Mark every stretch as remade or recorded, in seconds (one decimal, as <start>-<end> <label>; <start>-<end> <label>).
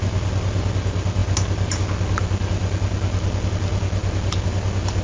0.0-5.0 recorded